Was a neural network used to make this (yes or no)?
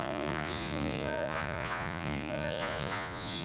yes